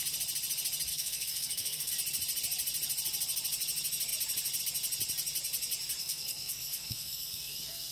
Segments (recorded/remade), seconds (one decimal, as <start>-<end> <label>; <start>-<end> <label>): 0.0-0.9 recorded; 0.9-1.9 remade; 1.9-6.0 recorded; 6.0-7.9 remade